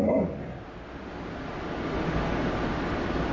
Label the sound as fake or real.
real